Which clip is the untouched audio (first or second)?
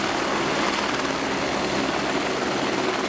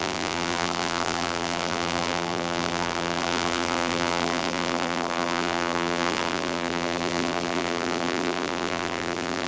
first